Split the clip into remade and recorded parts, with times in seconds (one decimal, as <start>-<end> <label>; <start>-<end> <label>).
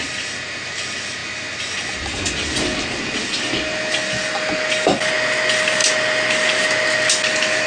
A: 0.0-7.7 recorded